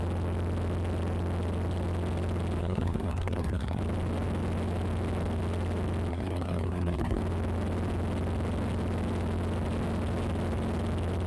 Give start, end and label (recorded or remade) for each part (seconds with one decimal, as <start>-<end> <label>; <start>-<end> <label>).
0.0-2.6 recorded; 2.6-3.8 remade; 3.8-6.1 recorded; 6.1-7.2 remade; 7.2-11.3 recorded